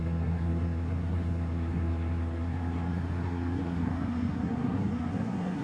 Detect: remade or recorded remade